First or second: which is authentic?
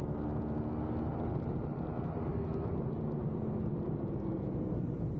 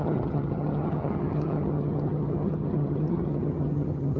first